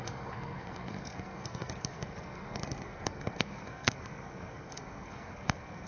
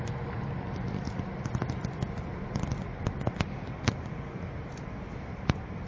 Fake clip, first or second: first